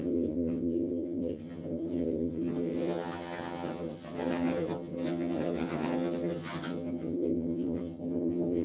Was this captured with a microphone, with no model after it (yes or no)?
no